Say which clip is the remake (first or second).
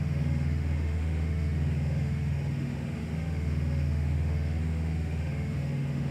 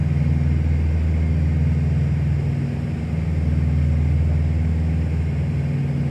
first